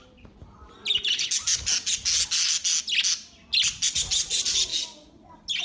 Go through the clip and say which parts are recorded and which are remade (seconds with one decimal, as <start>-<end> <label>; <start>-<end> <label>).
0.0-5.6 recorded